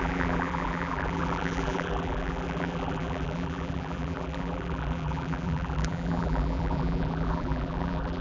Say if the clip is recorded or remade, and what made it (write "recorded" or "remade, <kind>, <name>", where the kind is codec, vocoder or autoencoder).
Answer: remade, vocoder, BigVGAN v2